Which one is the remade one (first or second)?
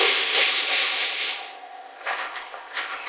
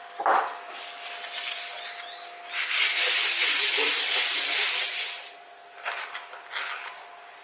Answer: first